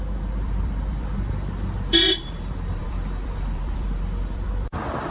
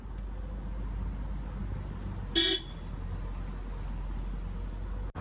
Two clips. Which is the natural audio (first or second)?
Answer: second